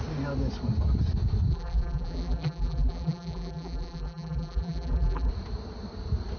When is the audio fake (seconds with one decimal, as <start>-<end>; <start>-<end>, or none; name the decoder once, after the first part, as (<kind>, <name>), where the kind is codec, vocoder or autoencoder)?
1.5-5.3 (vocoder, BigVGAN v2)